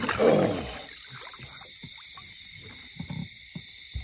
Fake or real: real